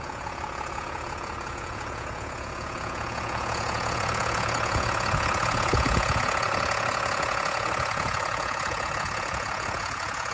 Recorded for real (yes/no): no